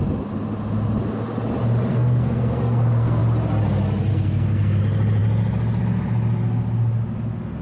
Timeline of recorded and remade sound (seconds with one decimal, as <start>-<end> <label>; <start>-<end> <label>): 0.0-1.9 recorded; 1.9-3.2 remade; 3.2-4.1 recorded; 4.1-4.8 remade; 4.8-7.6 recorded